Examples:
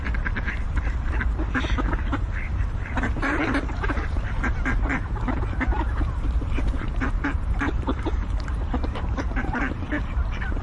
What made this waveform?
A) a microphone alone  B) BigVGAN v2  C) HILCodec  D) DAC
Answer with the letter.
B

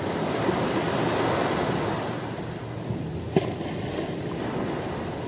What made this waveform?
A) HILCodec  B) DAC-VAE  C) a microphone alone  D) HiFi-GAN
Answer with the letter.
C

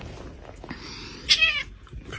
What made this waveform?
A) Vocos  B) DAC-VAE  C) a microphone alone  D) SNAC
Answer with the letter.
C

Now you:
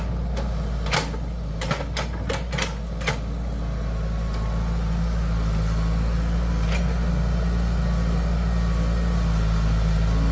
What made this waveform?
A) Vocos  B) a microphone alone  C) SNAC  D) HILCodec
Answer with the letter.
B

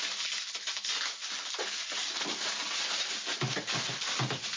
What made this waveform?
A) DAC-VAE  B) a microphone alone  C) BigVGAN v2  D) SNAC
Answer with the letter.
B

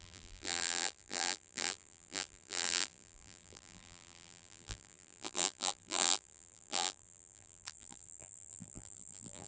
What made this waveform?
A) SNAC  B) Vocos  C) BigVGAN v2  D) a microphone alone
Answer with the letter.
C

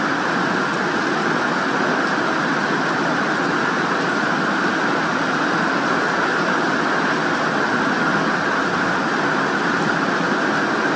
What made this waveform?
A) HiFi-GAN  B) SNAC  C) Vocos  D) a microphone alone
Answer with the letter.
D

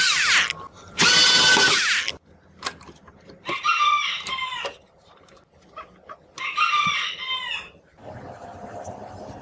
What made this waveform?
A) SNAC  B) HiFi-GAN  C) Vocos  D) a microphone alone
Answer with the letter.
D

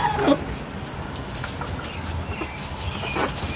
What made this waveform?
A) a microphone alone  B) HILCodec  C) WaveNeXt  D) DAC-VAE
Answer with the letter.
A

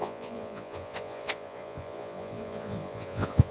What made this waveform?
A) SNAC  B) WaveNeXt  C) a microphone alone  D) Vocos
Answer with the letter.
D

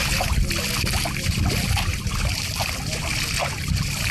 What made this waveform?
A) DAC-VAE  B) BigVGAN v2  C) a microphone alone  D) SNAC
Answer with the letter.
C